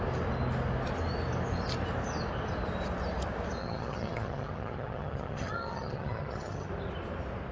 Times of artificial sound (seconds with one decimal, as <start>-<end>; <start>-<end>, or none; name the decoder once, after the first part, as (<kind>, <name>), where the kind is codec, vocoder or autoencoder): 3.6-6.7 (vocoder, HiFi-GAN)